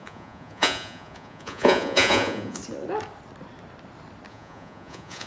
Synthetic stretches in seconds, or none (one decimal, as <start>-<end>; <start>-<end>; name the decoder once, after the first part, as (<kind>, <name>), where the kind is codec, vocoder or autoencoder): 0.0-2.6 (vocoder, Vocos); 4.3-5.3